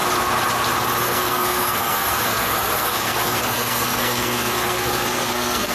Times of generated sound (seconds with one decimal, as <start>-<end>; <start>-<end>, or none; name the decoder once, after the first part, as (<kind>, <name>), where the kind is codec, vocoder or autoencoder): 1.0-5.7 (codec, SNAC)